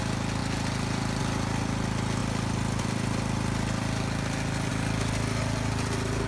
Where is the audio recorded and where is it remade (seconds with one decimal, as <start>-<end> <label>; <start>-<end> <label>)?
0.0-6.3 recorded